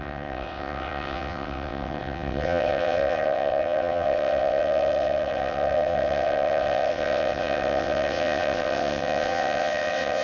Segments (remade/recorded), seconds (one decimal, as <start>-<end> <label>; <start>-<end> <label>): 0.0-10.2 remade